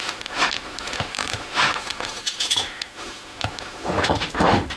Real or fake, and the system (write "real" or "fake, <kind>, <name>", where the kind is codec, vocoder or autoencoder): fake, autoencoder, DAC-VAE